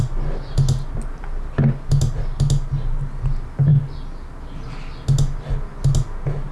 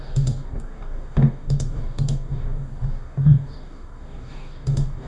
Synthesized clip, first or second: second